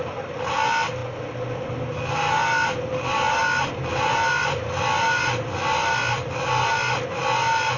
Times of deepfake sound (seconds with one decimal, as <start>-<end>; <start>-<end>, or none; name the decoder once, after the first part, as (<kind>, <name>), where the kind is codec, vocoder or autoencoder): none